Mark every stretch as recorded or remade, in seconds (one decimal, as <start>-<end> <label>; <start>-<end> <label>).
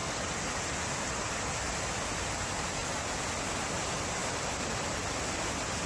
0.0-4.2 recorded; 4.2-5.0 remade; 5.0-5.9 recorded